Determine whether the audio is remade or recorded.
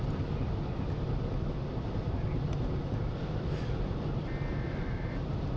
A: recorded